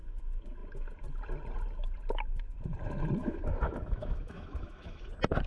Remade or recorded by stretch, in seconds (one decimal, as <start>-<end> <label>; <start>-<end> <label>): 0.0-3.2 recorded; 3.2-5.1 remade; 5.1-5.5 recorded